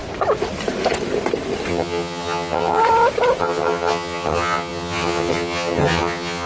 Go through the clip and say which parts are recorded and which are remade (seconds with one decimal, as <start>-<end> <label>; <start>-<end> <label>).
0.0-1.7 recorded; 1.7-2.8 remade; 2.8-3.4 recorded; 3.4-6.5 remade